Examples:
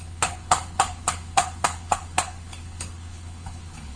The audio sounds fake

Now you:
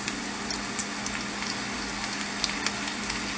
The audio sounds real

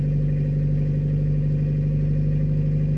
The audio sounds real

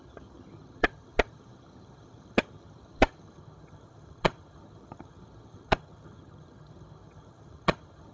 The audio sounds fake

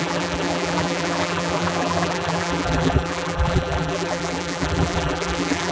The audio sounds fake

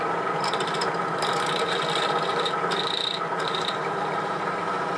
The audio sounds fake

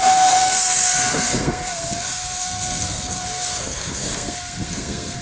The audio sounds fake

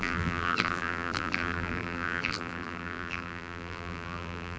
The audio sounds fake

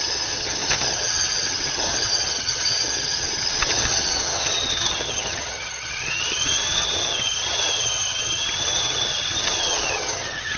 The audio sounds fake